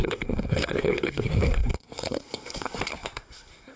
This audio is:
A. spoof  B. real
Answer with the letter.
A